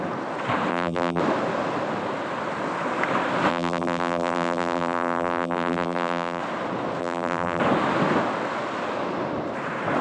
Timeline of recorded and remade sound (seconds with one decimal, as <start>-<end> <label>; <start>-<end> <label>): 0.0-0.7 recorded; 0.7-1.2 remade; 1.2-3.5 recorded; 3.5-6.4 remade; 6.4-7.0 recorded; 7.0-7.6 remade; 7.6-10.0 recorded